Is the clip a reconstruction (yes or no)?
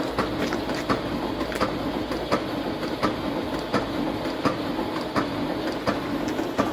no